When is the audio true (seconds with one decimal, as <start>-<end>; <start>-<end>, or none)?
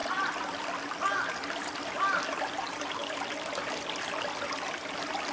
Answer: 0.0-5.3